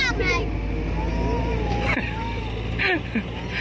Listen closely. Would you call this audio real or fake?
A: real